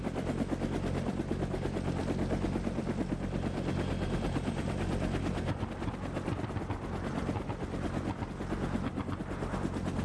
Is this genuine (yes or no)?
yes